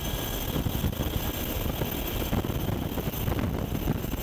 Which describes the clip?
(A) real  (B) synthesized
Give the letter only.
A